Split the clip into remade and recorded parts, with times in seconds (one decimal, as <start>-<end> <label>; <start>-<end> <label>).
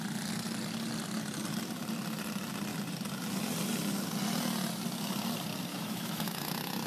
0.0-5.7 recorded; 5.7-6.9 remade